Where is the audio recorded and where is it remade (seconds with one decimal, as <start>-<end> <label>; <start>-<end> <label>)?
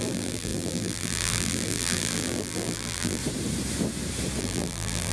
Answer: 0.0-3.2 remade; 3.2-4.4 recorded; 4.4-5.1 remade